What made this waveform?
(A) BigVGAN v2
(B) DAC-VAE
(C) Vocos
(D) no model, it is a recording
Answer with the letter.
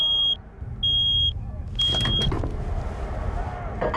D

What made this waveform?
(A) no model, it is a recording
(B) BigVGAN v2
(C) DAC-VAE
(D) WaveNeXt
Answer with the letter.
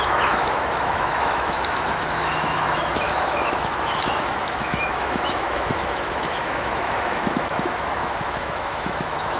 C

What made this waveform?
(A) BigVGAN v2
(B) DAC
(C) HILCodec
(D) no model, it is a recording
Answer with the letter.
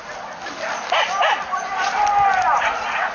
D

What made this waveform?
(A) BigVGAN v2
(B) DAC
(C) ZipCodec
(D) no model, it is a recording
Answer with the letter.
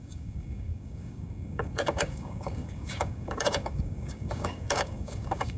B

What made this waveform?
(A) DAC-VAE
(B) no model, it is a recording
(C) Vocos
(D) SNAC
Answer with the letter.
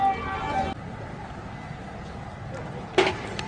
B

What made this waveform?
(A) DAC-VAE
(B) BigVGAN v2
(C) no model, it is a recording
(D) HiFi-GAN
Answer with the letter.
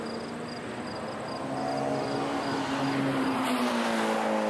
C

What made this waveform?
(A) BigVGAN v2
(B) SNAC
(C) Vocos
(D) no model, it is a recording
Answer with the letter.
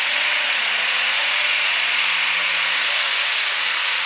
C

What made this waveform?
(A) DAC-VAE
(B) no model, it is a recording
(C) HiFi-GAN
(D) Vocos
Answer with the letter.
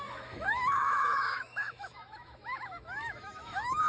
A